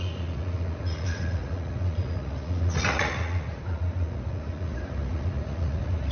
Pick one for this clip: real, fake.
fake